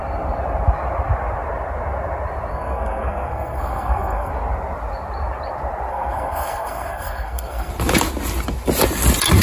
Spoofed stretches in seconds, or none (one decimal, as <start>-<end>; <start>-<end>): 2.5-4.3; 5.9-7.7